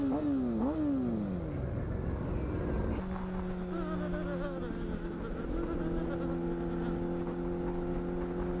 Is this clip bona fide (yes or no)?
yes